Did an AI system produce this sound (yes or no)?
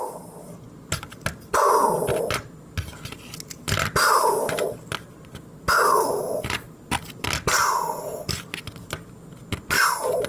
no